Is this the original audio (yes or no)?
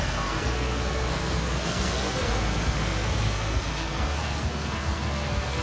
no